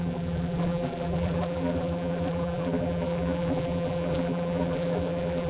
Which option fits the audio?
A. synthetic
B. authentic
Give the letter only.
A